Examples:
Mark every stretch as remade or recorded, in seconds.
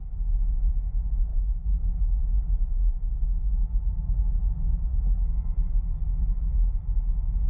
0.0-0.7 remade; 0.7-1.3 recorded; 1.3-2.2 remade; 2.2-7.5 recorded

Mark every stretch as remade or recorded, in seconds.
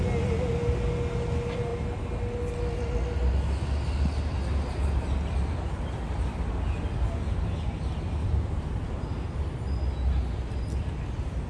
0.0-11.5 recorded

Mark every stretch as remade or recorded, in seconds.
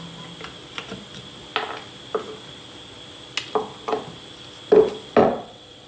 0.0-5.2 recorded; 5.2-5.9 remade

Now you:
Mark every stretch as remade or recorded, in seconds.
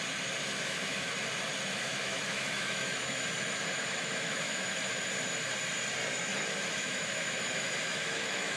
0.0-0.4 recorded; 0.4-1.1 remade; 1.1-1.7 recorded; 1.7-5.1 remade; 5.1-6.3 recorded; 6.3-8.6 remade